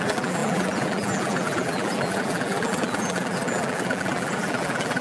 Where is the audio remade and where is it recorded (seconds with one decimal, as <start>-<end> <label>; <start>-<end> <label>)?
0.0-5.0 remade